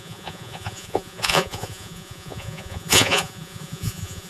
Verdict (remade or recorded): remade